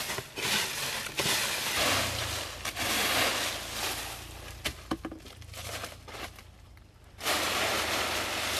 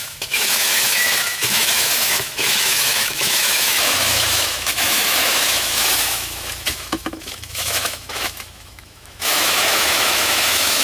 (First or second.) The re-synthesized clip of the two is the second